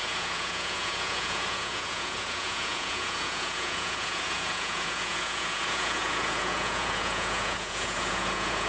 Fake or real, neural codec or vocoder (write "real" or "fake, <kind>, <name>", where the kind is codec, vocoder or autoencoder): fake, vocoder, Vocos